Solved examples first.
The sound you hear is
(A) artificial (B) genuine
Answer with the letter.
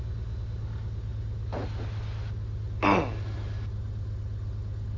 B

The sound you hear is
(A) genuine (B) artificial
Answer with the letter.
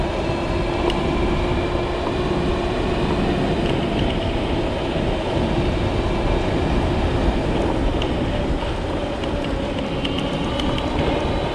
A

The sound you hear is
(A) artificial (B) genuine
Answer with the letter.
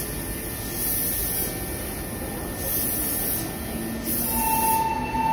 B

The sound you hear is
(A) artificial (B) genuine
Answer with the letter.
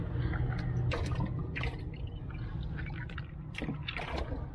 B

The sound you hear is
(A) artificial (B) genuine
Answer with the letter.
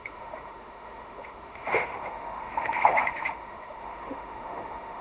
A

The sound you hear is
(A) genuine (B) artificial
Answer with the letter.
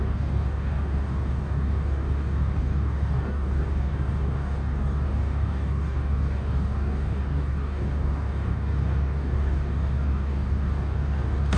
B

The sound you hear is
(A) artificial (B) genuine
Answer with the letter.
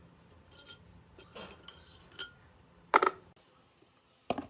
B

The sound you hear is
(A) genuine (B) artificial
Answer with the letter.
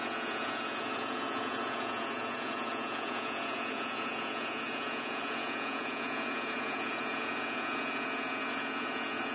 B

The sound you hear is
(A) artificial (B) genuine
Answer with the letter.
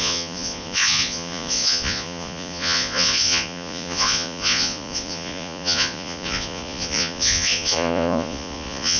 A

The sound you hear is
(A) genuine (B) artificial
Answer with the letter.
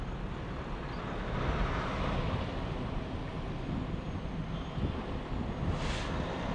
A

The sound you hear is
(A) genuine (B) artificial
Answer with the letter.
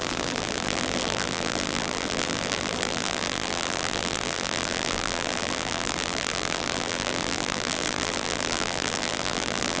B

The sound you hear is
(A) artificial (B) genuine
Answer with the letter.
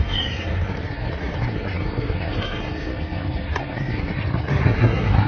A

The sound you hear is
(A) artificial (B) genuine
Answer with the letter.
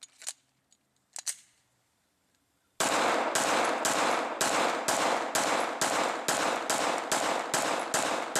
B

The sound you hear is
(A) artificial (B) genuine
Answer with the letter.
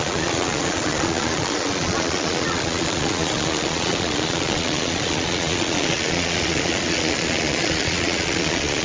A